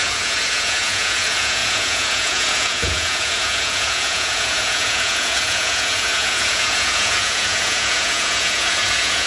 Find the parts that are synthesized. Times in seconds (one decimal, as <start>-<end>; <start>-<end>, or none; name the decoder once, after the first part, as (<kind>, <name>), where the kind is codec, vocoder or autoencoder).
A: 0.0-9.3 (vocoder, Vocos)